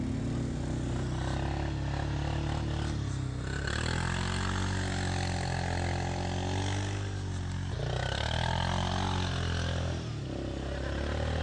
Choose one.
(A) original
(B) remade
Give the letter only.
A